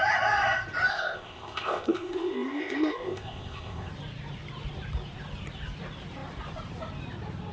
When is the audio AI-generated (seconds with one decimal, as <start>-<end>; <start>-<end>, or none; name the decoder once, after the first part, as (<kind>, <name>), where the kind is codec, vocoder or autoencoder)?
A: 0.9-3.9 (codec, ZipCodec)